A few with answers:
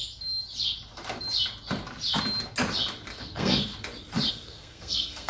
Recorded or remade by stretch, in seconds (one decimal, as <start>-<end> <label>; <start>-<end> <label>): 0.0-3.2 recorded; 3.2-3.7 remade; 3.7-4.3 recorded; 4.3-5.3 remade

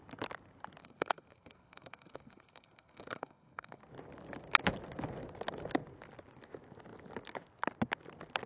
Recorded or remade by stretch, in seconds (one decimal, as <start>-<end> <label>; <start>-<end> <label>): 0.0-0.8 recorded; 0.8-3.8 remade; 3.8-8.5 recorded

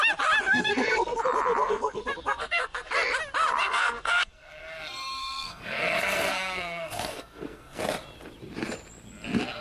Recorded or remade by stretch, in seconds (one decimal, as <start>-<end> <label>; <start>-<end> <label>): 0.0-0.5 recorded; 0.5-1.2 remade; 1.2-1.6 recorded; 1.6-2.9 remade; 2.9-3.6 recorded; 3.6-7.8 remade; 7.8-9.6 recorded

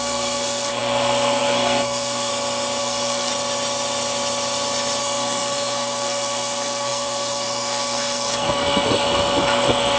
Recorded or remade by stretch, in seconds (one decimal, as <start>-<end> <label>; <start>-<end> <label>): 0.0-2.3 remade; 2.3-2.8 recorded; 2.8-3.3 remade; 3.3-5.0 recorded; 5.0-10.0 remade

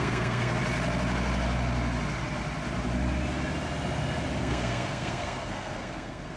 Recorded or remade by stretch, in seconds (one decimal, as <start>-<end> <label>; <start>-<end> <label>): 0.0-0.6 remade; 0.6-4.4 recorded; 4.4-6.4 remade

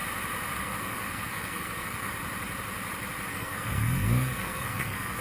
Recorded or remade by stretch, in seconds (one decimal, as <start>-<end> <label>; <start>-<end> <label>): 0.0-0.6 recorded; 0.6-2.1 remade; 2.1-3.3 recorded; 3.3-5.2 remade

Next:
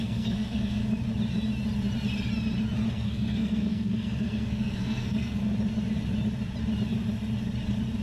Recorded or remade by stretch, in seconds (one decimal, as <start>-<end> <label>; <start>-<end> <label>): 0.0-0.8 remade; 0.8-2.9 recorded; 2.9-5.4 remade; 5.4-8.0 recorded

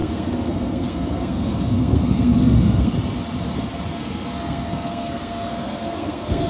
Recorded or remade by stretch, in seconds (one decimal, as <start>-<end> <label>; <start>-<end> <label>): 0.0-2.9 remade; 2.9-4.0 recorded; 4.0-6.5 remade